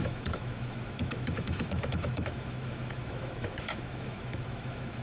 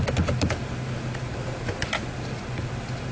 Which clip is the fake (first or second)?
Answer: first